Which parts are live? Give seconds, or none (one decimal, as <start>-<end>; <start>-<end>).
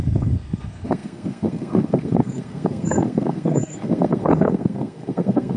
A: none